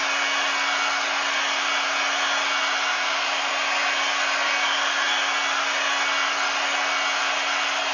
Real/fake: real